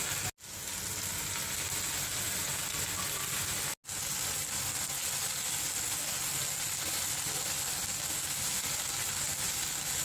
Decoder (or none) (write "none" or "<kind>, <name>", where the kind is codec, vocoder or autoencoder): none